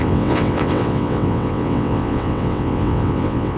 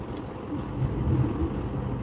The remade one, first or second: first